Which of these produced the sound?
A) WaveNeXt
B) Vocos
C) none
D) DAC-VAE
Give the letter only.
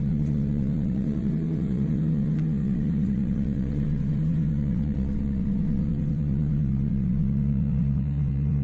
A